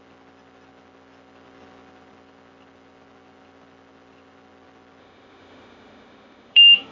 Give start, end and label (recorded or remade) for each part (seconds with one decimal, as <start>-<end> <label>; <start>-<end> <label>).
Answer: 0.0-5.0 recorded; 5.0-6.9 remade